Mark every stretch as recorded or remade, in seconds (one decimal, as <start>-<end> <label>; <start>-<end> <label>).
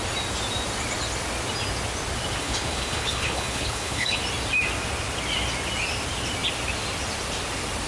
0.0-2.4 recorded; 2.4-4.2 remade; 4.2-7.9 recorded